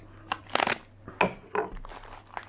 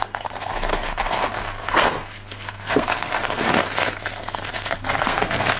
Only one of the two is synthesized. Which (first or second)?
second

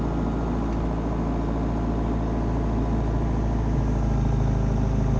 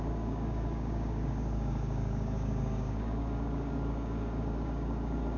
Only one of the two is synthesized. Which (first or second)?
second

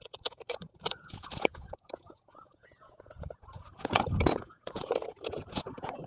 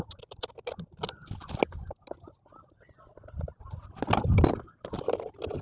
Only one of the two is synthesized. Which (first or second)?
first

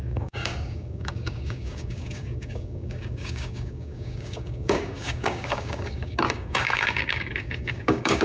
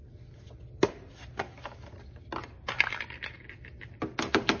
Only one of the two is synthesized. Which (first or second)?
first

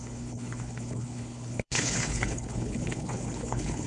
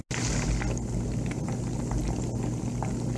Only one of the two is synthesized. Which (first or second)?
first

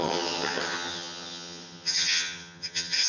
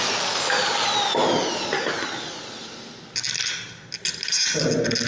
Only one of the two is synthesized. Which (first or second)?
first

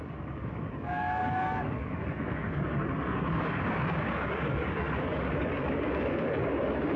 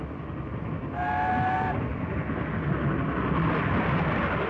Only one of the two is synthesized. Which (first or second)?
first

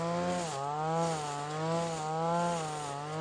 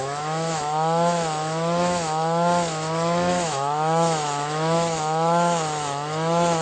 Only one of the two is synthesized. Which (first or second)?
second